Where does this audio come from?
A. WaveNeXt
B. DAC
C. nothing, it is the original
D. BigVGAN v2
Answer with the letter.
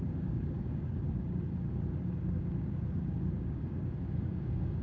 B